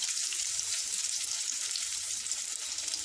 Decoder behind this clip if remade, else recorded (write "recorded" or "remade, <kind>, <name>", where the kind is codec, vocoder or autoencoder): remade, vocoder, BigVGAN v2